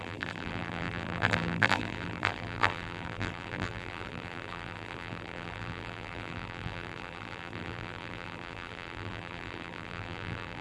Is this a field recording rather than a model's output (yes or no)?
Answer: no